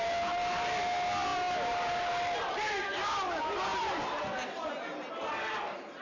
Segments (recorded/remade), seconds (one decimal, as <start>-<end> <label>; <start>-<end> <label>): 0.0-6.0 recorded